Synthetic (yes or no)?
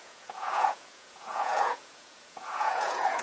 yes